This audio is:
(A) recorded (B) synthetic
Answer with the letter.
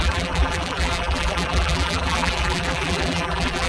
B